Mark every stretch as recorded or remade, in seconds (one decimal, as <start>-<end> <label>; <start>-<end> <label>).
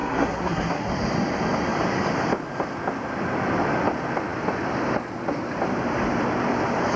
0.0-0.9 remade; 0.9-7.0 recorded